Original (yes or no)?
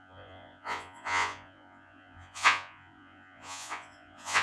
no